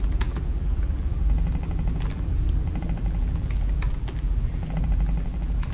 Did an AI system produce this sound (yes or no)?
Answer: yes